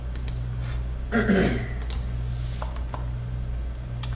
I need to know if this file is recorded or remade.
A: recorded